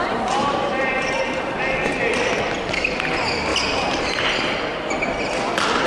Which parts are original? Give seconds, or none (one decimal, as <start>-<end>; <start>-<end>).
0.0-0.4; 1.6-3.5; 4.3-5.9